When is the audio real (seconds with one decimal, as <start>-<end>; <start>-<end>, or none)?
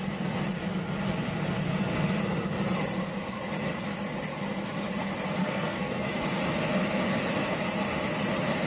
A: 0.0-5.4; 6.1-8.7